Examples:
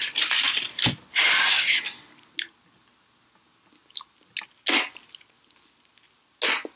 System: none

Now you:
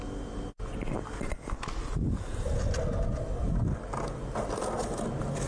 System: none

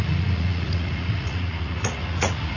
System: vocoder, Vocos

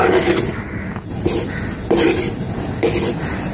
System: none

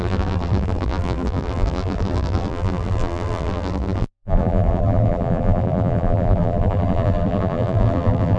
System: vocoder, BigVGAN v2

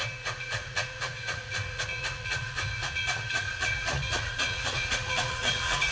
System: vocoder, Vocos